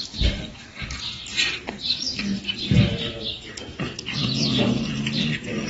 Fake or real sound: real